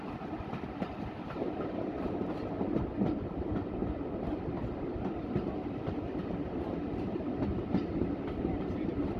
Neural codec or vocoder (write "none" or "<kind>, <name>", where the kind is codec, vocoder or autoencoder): none